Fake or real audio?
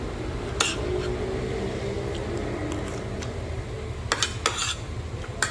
real